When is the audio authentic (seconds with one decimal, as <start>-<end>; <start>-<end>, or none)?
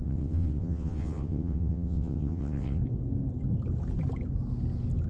2.8-5.1